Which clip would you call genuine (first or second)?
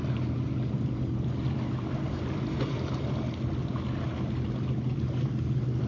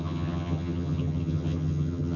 first